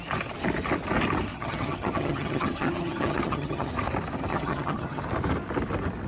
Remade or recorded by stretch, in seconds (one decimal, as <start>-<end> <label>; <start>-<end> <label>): 0.0-1.3 recorded; 1.3-3.7 remade; 3.7-4.3 recorded; 4.3-5.0 remade; 5.0-6.1 recorded